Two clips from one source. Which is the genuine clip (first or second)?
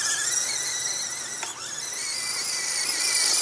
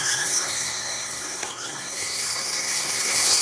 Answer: first